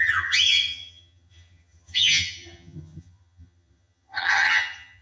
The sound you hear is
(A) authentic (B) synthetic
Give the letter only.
B